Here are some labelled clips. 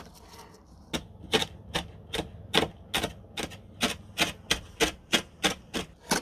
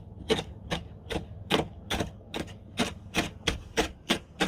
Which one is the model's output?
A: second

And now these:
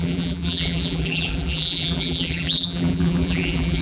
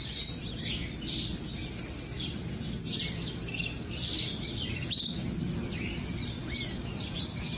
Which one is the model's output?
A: first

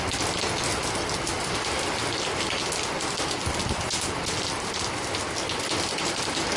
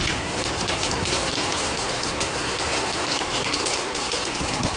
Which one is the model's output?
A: second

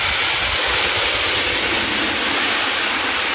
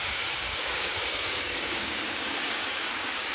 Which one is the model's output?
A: second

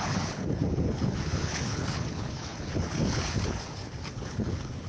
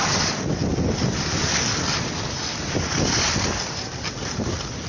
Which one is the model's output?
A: first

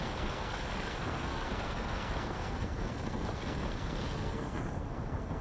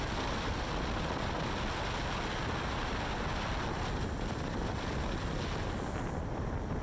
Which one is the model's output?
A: first